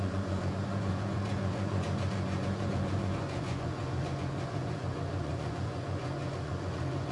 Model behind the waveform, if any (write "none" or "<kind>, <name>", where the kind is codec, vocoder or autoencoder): vocoder, Vocos